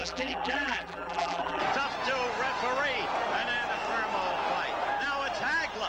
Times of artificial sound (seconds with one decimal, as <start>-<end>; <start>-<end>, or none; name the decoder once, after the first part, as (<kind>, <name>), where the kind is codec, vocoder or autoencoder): 0.0-1.6 (vocoder, BigVGAN v2)